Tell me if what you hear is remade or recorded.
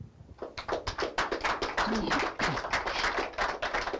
recorded